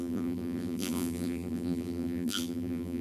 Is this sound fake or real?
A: fake